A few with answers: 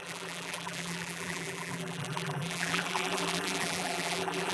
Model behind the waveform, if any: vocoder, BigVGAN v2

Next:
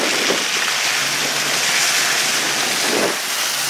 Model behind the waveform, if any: none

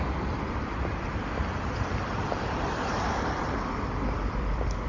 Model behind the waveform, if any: vocoder, BigVGAN v2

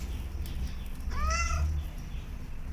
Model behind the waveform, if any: none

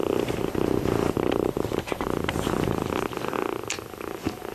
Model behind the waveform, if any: none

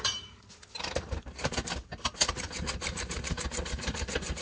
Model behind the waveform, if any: vocoder, BigVGAN v2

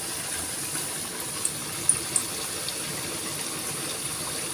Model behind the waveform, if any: none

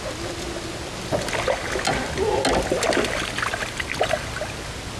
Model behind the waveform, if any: none